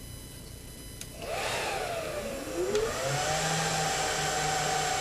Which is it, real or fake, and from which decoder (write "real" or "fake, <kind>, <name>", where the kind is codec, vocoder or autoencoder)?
real